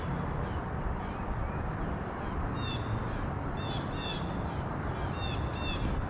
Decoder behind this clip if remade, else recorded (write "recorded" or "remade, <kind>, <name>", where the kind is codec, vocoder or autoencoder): recorded